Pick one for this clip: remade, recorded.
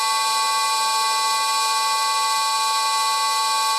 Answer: recorded